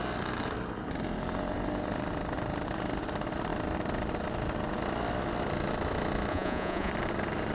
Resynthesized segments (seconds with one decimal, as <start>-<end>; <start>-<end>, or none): 6.3-6.9